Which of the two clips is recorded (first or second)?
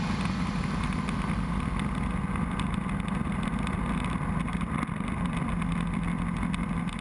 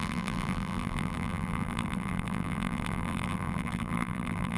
first